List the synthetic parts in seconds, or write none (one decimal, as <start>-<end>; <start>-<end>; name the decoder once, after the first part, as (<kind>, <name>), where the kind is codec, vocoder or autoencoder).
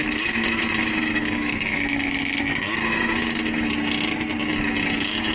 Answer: 0.0-2.4 (autoencoder, DAC-VAE); 2.8-3.7